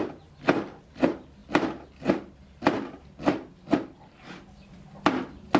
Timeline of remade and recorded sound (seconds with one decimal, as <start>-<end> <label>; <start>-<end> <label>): 0.0-5.6 recorded